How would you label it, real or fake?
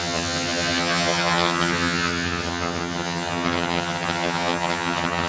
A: fake